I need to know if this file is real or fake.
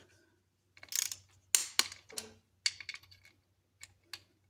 real